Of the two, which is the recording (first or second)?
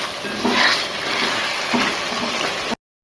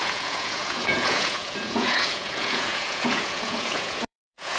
first